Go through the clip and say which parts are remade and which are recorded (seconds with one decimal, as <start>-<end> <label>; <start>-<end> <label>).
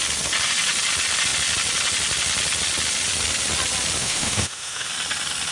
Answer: 0.0-4.0 recorded; 4.0-4.9 remade; 4.9-5.5 recorded